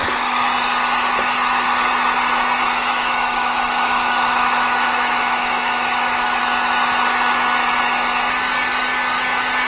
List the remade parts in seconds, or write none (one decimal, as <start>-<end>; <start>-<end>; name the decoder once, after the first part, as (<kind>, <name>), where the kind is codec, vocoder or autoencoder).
2.6-6.4 (autoencoder, DAC-VAE)